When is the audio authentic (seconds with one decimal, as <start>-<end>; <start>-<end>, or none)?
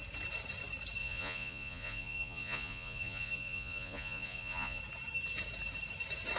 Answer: 0.0-1.0; 4.8-6.4